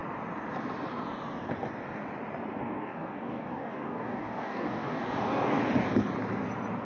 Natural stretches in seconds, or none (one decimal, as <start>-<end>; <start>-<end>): 0.0-2.6; 5.6-6.8